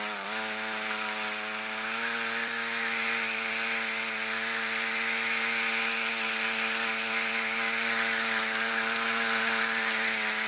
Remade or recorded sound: recorded